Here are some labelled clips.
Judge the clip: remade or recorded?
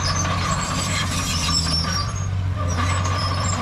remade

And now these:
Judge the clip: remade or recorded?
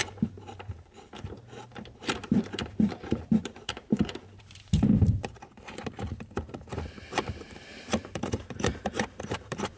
remade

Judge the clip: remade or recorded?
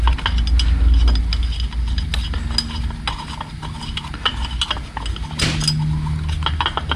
recorded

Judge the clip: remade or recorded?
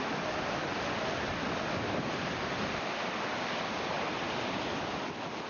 recorded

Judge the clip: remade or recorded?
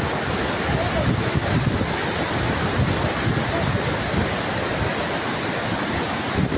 recorded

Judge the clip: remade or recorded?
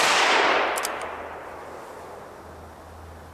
recorded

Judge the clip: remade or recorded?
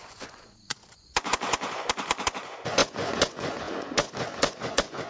remade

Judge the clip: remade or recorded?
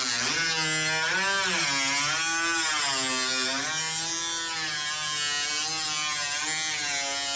recorded